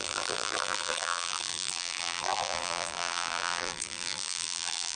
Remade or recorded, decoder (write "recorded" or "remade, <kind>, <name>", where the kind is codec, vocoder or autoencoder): remade, vocoder, BigVGAN v2